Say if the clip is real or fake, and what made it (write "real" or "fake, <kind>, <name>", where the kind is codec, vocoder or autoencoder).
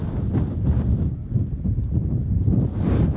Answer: real